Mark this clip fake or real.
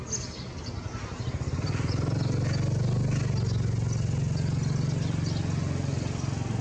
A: real